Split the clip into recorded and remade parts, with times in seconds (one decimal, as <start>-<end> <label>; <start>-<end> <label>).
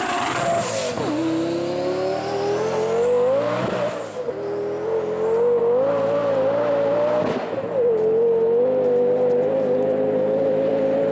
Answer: 0.0-11.1 recorded